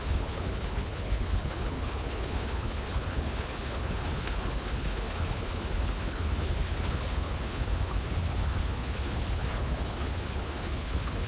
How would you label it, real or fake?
fake